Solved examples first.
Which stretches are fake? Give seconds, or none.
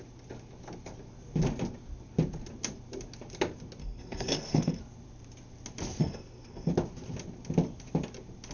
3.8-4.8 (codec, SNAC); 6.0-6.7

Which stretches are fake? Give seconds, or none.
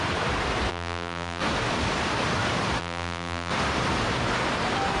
0.7-1.4 (vocoder, BigVGAN v2); 2.8-3.5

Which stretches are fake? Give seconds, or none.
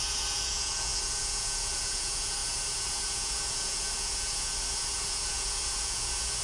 0.0-6.4 (vocoder, Vocos)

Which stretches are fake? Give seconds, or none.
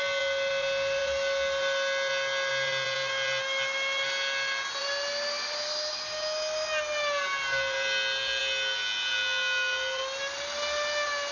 none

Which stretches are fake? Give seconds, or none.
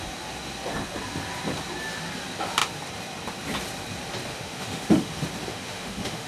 4.3-5.1 (autoencoder, DAC-VAE); 5.5-6.3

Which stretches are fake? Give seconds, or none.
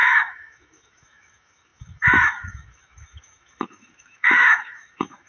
0.0-5.3 (autoencoder, DAC-VAE)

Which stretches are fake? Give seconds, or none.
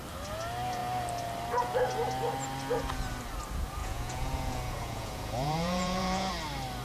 3.8-6.3 (vocoder, Vocos)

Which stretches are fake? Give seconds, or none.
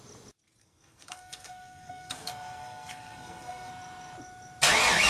0.6-3.7 (codec, SNAC)